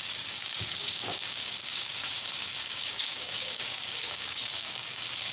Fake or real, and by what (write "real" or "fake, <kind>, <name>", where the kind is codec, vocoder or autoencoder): fake, codec, DAC